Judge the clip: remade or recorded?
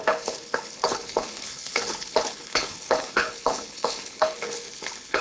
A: remade